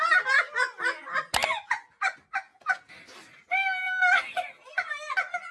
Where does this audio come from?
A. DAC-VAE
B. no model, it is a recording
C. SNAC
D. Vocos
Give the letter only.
B